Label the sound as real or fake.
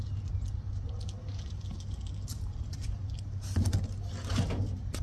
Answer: real